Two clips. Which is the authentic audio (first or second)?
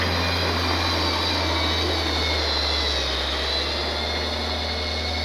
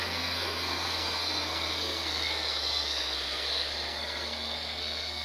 first